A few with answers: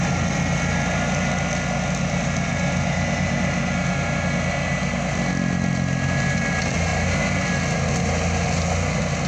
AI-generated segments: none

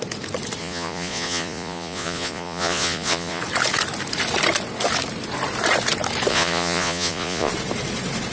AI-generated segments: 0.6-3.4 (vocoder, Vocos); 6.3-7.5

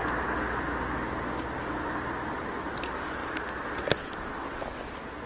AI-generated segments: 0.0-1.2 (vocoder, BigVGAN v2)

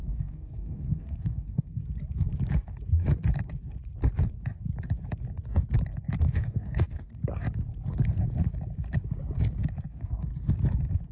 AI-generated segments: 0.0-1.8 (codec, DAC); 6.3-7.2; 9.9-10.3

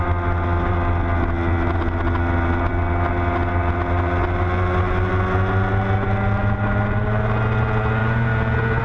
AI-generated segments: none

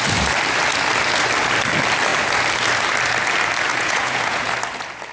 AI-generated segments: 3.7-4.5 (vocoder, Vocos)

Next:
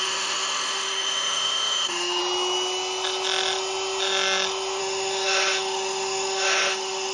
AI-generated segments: 0.0-2.2 (autoencoder, DAC-VAE); 4.8-7.1

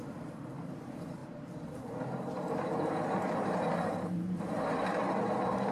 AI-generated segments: 0.0-5.7 (vocoder, BigVGAN v2)